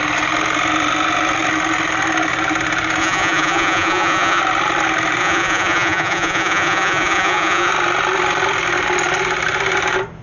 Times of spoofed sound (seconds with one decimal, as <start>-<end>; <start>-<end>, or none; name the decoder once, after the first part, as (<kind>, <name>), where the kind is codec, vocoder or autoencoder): 3.0-4.4 (vocoder, Vocos); 5.2-7.7